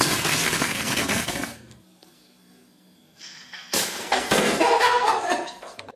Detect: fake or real fake